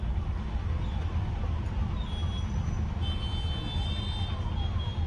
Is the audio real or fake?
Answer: real